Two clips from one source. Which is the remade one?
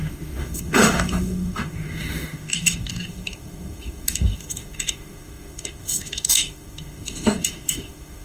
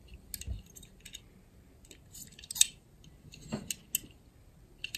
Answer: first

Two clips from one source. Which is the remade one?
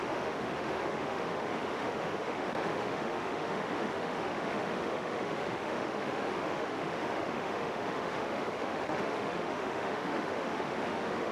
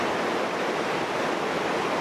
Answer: first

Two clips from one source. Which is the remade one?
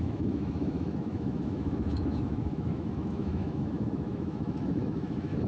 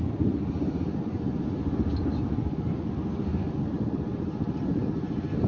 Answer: first